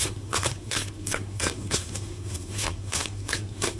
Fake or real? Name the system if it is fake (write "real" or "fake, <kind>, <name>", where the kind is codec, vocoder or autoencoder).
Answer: fake, codec, SNAC